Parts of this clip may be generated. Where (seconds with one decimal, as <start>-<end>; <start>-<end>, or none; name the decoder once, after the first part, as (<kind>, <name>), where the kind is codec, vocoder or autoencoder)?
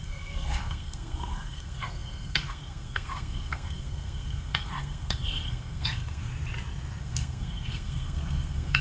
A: 0.0-6.3 (codec, SNAC); 7.0-8.8